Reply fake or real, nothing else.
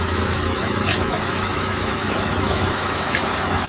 fake